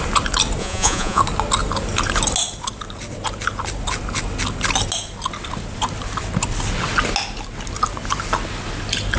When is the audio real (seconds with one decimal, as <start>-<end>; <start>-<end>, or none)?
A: 0.0-0.6; 1.2-9.2